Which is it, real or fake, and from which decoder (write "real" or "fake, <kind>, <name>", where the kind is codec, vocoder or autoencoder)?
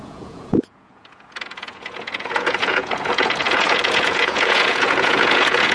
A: fake, vocoder, Vocos